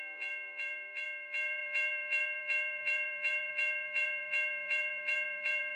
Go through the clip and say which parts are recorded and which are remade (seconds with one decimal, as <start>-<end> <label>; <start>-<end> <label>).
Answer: 0.0-5.8 remade